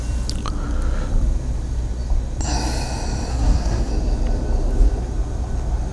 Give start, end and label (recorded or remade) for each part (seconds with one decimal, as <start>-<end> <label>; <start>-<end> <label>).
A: 0.0-3.3 recorded; 3.3-3.9 remade; 3.9-5.9 recorded